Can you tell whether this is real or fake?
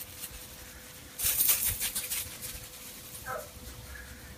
real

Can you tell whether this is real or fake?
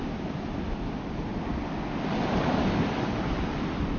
real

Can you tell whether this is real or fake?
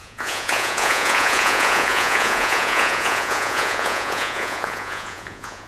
fake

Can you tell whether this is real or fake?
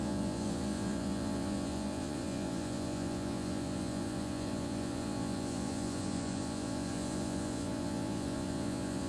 fake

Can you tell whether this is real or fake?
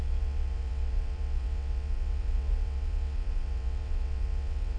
fake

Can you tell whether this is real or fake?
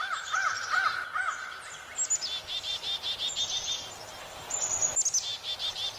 real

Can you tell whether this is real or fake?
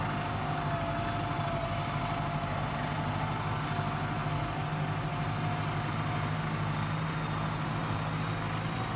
real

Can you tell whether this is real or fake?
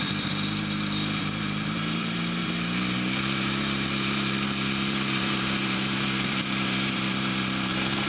fake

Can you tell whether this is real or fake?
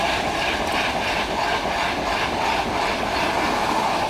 real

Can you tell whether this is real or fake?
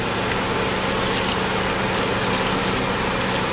real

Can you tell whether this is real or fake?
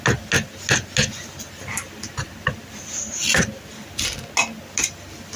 real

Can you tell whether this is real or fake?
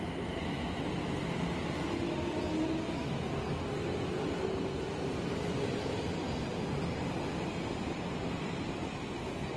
real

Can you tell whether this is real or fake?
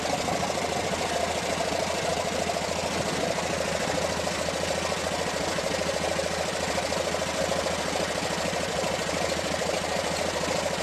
real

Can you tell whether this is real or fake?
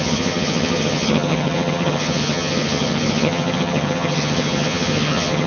fake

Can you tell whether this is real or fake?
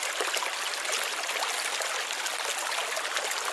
real